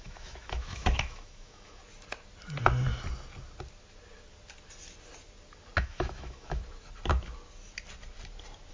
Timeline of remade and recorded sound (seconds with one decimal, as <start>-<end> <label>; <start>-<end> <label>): 0.0-1.8 remade; 1.8-5.8 recorded; 5.8-6.6 remade; 6.6-8.7 recorded